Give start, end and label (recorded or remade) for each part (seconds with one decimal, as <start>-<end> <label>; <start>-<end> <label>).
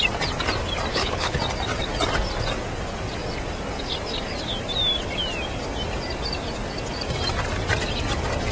0.0-0.9 recorded; 0.9-1.4 remade; 1.4-8.5 recorded